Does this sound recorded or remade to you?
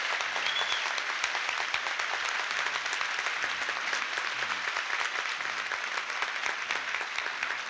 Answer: recorded